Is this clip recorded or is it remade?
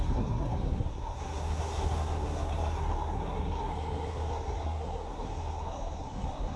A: remade